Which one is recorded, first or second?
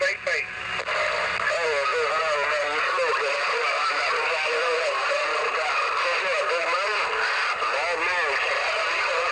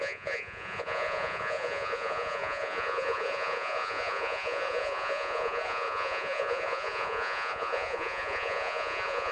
first